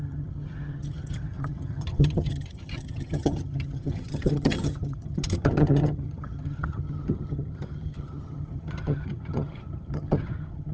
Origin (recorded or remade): remade